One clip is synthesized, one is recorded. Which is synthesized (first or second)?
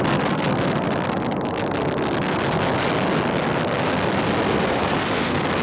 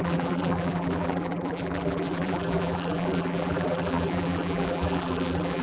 second